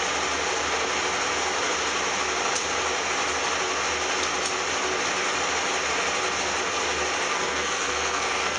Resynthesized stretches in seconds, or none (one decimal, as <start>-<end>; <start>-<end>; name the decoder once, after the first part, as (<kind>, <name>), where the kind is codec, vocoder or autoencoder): 7.3-8.6 (codec, SNAC)